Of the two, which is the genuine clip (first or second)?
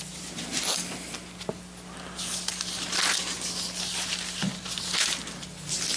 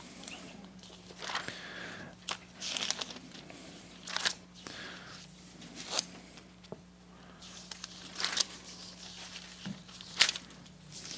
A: first